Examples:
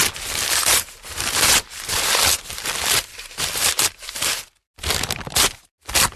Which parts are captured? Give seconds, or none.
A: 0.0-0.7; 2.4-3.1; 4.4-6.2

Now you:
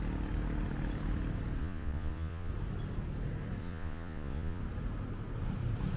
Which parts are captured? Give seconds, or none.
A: 0.0-1.6; 2.5-3.6; 4.6-6.0

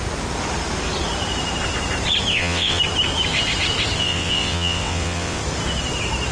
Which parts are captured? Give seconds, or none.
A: 0.0-2.3; 2.8-4.0; 5.4-6.3

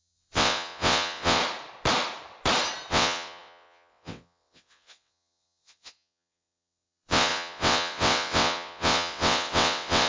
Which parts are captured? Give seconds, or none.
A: 1.4-2.9

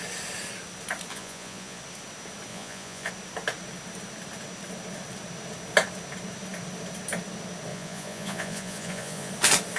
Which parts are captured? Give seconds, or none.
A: 0.0-1.1; 1.8-2.5; 3.1-7.7; 9.3-9.8

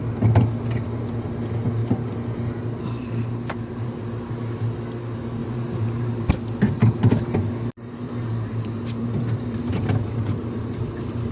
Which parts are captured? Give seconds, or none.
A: 0.0-1.8; 4.3-5.4; 6.3-6.8

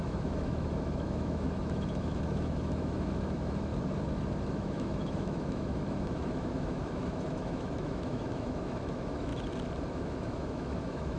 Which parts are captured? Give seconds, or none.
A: 3.7-4.5; 9.3-9.9

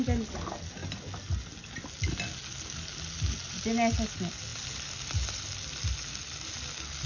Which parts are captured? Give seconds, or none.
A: 0.0-7.1